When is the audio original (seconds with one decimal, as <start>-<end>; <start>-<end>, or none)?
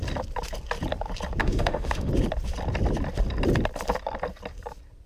0.0-1.4; 2.1-5.1